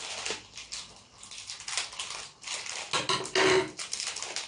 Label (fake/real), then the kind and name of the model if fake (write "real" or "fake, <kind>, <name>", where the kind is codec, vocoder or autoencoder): real